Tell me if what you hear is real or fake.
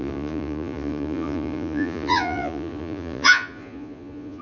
fake